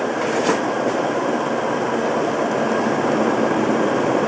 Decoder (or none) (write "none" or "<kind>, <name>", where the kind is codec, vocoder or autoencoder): none